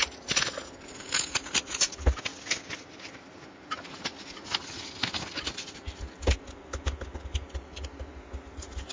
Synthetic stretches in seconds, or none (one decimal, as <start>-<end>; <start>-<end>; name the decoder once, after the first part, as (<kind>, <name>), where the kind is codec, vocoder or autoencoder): none

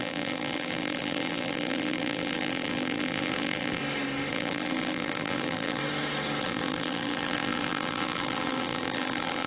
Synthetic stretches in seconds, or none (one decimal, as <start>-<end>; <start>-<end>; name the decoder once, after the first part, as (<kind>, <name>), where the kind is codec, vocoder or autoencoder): 0.0-3.8 (vocoder, BigVGAN v2); 4.3-5.8; 6.4-9.5

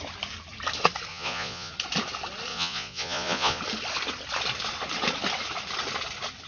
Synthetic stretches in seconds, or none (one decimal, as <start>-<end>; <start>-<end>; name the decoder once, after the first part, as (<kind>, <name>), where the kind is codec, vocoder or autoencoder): 1.1-1.7 (vocoder, Vocos); 2.5-3.6

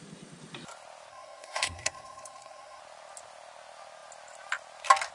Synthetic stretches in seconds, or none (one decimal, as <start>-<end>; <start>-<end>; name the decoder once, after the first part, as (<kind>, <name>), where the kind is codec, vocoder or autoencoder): 1.1-2.8 (codec, SNAC)

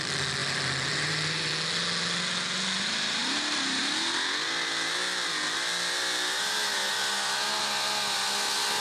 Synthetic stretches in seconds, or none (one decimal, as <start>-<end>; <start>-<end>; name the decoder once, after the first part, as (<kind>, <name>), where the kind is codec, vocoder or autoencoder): 0.4-1.5 (vocoder, BigVGAN v2); 3.2-3.8

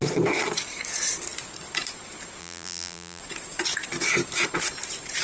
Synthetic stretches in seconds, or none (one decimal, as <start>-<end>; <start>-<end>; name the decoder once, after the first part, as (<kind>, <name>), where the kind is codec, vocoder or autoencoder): 2.4-3.2 (vocoder, BigVGAN v2)